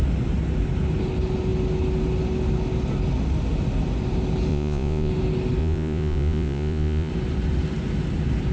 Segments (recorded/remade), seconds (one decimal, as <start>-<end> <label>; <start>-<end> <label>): 0.0-4.5 recorded; 4.5-5.1 remade; 5.1-5.6 recorded; 5.6-7.1 remade; 7.1-8.5 recorded